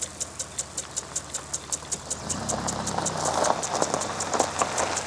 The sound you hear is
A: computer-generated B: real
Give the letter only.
B